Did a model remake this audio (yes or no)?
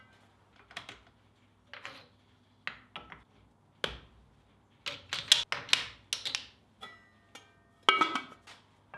no